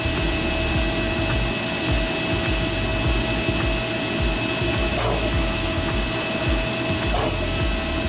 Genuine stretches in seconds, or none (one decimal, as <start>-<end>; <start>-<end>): 0.0-8.1